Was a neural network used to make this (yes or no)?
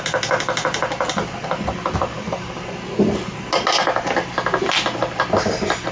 no